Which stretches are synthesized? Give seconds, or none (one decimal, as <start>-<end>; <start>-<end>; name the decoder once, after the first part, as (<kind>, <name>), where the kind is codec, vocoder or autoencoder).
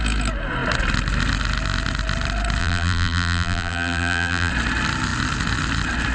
2.6-4.5 (vocoder, BigVGAN v2)